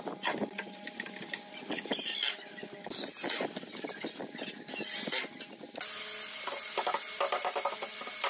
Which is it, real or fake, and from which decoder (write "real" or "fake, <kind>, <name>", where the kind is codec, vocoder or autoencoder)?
real